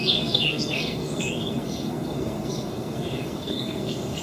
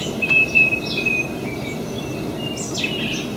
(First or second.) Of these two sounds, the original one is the second